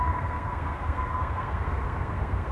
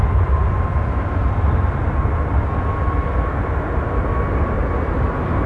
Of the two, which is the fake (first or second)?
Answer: first